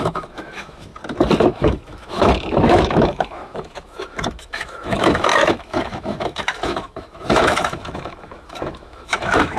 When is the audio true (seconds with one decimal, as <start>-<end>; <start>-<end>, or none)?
0.9-1.4